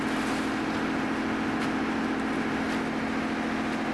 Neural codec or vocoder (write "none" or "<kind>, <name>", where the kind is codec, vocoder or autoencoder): none